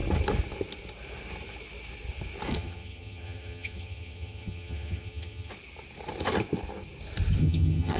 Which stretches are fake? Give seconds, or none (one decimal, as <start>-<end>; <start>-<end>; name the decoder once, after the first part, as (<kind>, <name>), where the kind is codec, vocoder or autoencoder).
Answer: 2.5-5.5 (vocoder, HiFi-GAN); 7.4-8.0